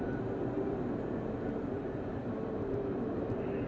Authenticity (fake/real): fake